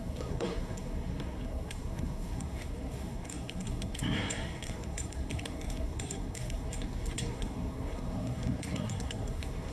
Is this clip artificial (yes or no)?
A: yes